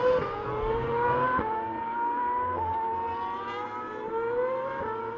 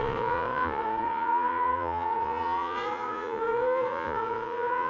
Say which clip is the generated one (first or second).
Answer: second